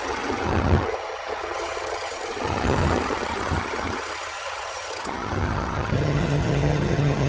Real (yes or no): no